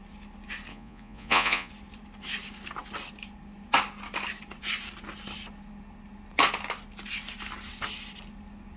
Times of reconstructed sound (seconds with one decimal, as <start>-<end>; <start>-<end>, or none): 0.7-1.7